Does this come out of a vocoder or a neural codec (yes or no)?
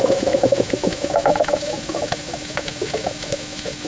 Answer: yes